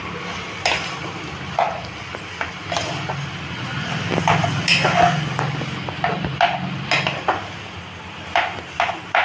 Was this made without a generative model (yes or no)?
yes